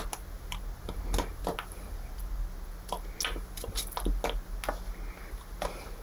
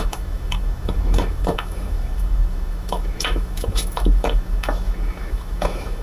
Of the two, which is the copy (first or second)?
second